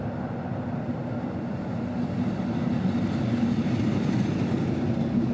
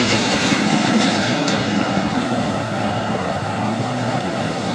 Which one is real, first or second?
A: first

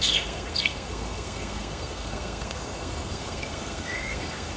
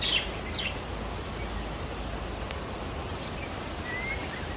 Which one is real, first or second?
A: second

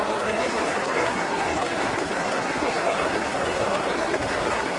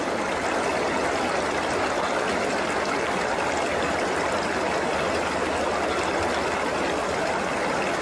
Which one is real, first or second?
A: second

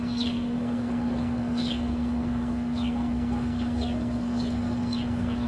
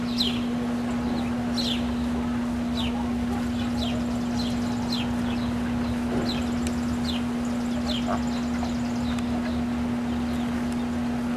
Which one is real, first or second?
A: second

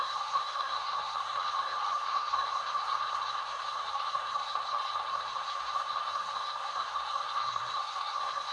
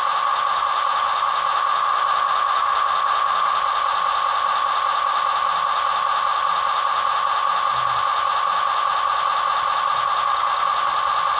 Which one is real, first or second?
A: second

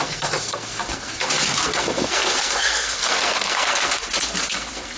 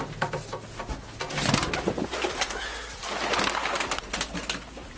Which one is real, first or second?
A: second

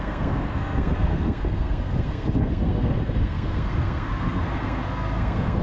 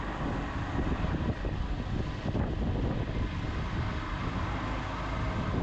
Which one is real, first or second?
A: second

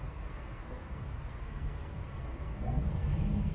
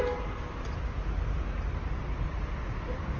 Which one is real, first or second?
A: second